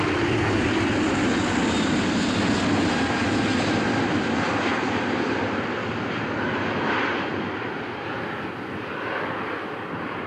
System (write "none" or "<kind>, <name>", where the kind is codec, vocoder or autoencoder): none